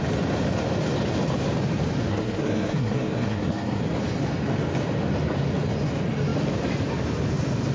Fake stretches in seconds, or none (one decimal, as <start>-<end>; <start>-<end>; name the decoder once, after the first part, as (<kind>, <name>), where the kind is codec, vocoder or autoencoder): 2.1-3.8 (codec, SNAC)